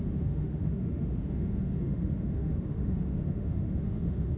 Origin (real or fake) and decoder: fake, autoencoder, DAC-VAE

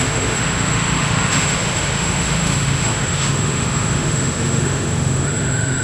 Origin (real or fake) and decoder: fake, autoencoder, DAC-VAE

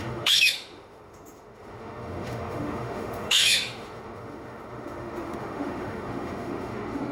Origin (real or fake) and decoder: fake, autoencoder, DAC-VAE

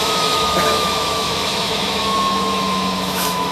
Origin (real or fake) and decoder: fake, autoencoder, DAC-VAE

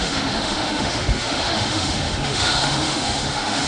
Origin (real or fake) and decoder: fake, autoencoder, DAC-VAE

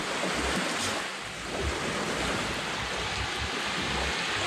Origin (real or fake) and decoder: real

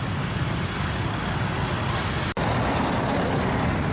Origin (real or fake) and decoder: real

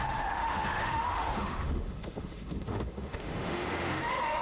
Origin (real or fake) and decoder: fake, autoencoder, DAC-VAE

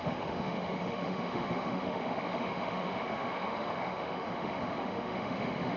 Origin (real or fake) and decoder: fake, autoencoder, DAC-VAE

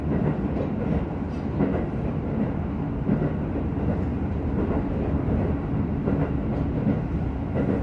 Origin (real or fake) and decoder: real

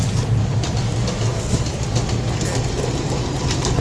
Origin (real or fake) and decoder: real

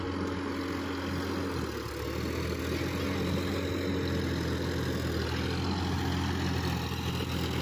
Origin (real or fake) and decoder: real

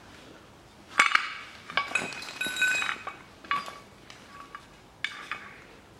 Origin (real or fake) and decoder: real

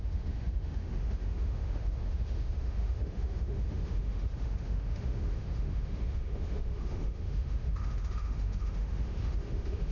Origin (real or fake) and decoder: fake, autoencoder, DAC-VAE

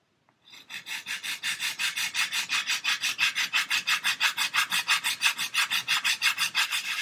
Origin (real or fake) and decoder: real